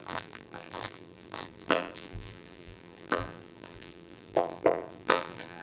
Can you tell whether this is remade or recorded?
remade